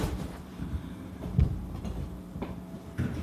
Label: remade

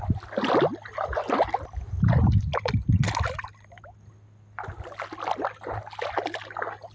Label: recorded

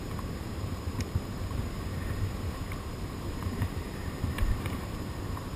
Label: remade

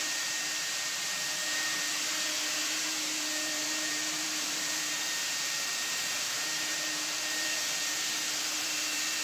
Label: remade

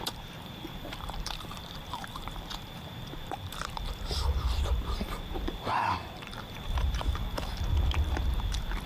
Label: remade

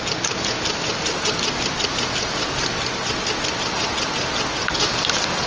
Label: recorded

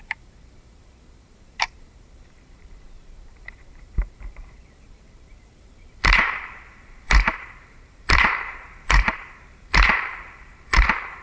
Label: remade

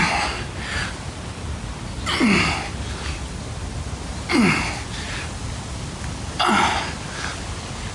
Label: recorded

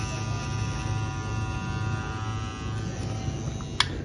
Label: recorded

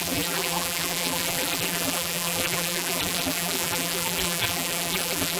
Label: remade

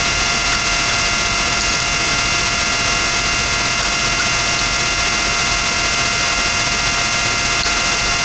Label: recorded